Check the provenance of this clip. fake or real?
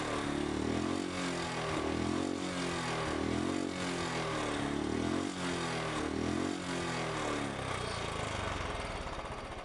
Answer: real